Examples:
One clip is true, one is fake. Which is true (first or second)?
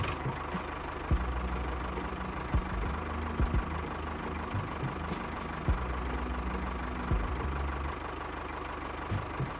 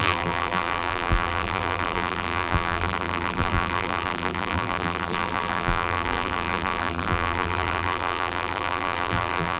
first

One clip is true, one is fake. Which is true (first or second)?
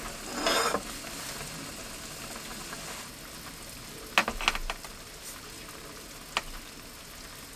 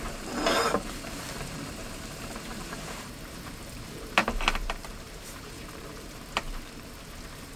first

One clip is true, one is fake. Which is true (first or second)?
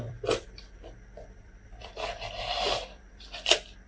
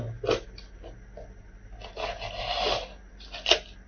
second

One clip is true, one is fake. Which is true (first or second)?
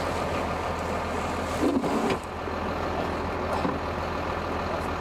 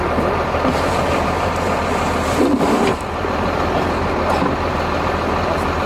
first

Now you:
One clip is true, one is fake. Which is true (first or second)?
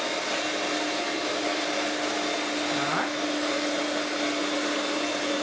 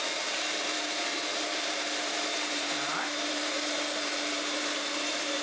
first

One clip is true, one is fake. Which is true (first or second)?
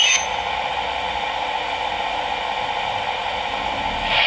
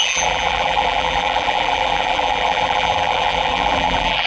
first